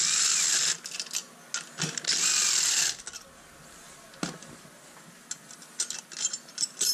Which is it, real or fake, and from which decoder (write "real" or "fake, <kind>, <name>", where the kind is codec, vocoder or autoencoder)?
real